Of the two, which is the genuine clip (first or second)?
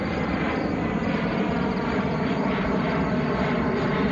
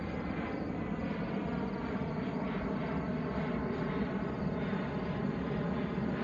second